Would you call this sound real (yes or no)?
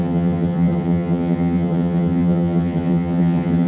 no